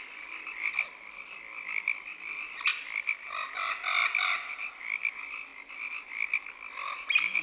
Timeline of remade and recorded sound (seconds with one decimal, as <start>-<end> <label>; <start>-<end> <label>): 0.0-2.7 recorded; 2.7-3.3 remade; 3.3-7.4 recorded

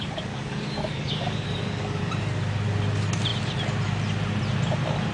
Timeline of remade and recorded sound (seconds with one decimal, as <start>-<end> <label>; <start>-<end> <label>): 0.0-2.1 remade; 2.1-5.1 recorded

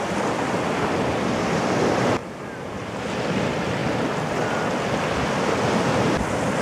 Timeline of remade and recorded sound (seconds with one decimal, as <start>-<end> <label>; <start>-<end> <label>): 0.0-6.6 recorded

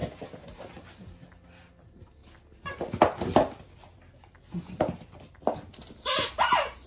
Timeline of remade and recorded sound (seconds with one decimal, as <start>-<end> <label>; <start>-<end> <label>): 0.0-6.9 recorded

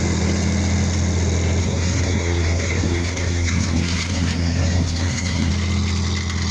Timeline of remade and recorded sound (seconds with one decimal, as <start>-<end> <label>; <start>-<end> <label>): 0.0-1.6 recorded; 1.6-5.5 remade; 5.5-6.5 recorded